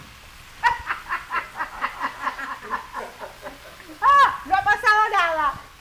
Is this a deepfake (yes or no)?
no